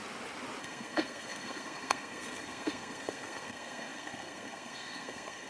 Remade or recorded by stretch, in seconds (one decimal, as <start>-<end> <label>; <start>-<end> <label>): 0.0-0.6 recorded; 0.6-5.5 remade